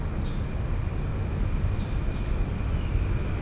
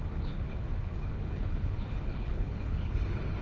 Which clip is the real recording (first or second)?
first